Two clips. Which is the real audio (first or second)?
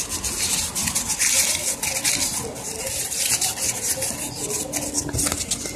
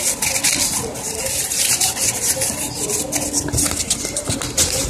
first